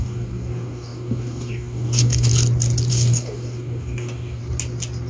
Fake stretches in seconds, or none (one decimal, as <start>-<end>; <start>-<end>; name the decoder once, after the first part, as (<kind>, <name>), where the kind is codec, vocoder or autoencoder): 0.0-2.3 (codec, DAC); 2.9-4.4